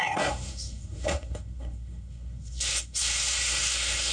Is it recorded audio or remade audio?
remade